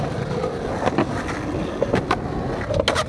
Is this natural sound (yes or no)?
yes